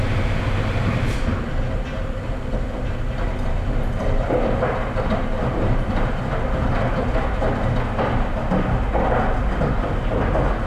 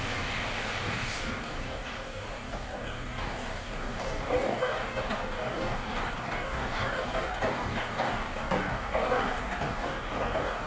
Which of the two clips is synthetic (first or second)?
second